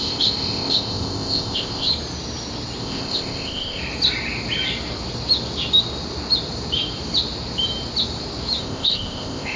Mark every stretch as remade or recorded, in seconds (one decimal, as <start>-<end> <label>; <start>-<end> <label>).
0.0-1.9 remade; 1.9-2.8 recorded; 2.8-3.8 remade; 3.8-8.6 recorded; 8.6-9.6 remade